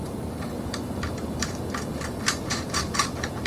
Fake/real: fake